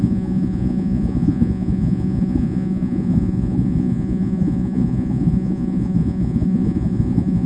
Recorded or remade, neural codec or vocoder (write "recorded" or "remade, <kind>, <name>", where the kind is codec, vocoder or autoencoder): remade, vocoder, Vocos